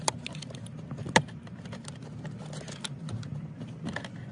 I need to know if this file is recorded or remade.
remade